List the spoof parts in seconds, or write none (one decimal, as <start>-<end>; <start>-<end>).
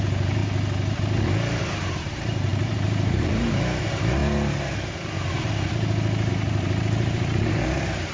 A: 0.0-0.4; 1.5-4.2; 6.3-8.1